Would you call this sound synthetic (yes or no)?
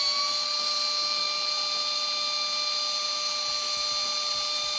no